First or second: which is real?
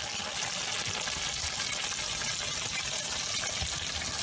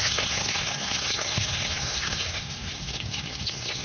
first